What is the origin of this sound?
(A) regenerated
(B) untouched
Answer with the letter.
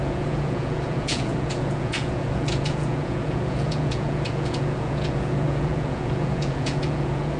A